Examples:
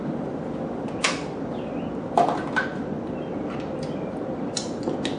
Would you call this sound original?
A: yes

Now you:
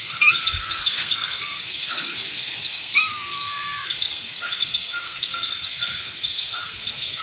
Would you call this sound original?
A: no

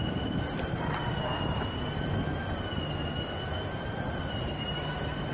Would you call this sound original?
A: yes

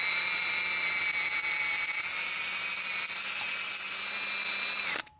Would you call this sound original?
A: yes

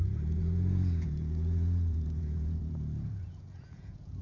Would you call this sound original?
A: no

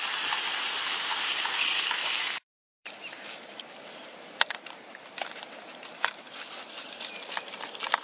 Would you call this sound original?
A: no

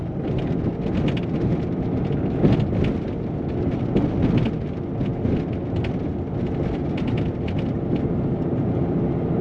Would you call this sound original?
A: yes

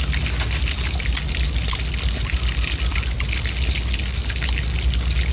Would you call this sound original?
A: yes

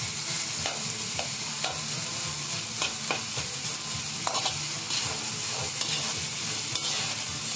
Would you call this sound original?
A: yes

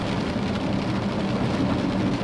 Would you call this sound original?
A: yes